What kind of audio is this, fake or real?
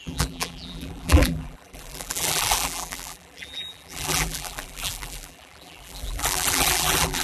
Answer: fake